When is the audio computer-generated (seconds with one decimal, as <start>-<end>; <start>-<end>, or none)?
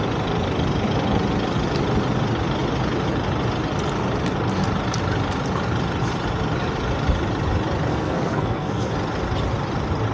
7.9-8.9